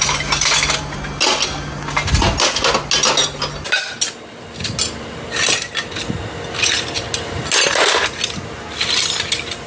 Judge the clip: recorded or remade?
recorded